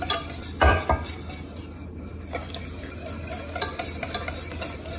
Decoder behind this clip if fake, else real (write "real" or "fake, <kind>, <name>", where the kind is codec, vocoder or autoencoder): real